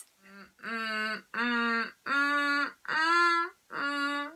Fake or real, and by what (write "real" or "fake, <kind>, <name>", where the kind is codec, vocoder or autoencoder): real